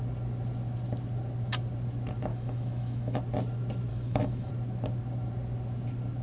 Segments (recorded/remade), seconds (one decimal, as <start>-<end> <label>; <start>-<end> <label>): 0.0-2.3 recorded; 2.3-3.2 remade; 3.2-3.9 recorded; 3.9-4.5 remade; 4.5-6.2 recorded